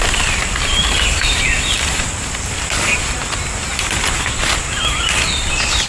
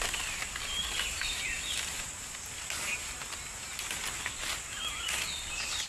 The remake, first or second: first